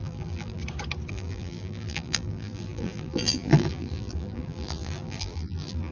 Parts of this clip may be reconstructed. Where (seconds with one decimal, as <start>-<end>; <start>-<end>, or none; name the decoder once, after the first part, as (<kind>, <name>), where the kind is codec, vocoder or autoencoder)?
0.0-0.6 (vocoder, BigVGAN v2); 1.1-5.9